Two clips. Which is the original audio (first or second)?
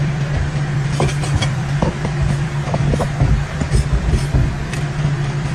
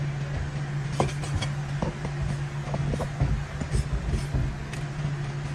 second